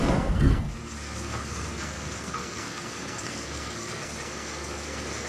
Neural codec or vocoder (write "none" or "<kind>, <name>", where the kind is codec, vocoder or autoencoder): codec, SNAC